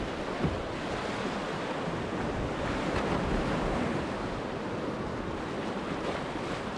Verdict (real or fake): real